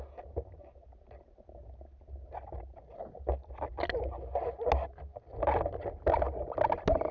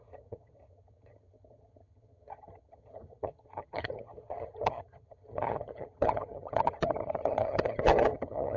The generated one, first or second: second